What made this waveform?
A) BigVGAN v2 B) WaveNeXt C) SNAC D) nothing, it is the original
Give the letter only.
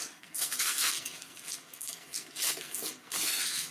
C